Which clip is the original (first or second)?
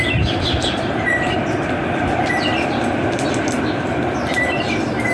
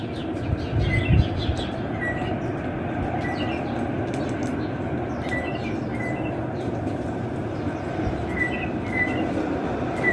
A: second